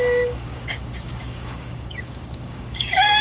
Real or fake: fake